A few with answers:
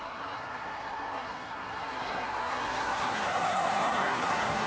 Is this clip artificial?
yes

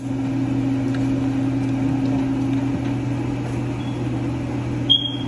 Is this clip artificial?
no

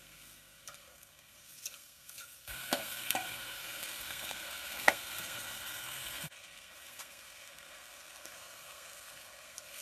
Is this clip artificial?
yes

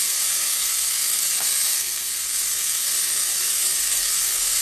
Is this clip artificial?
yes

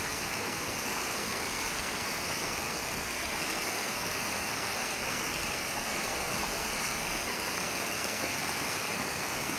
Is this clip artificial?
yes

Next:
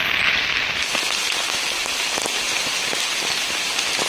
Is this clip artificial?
no